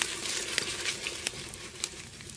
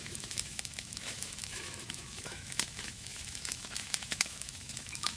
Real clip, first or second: first